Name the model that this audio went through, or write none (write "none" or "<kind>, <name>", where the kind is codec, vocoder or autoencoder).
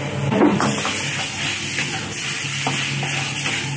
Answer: none